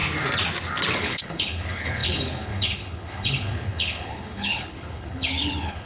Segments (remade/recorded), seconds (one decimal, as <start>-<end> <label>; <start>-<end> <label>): 0.0-1.0 recorded; 1.0-5.9 remade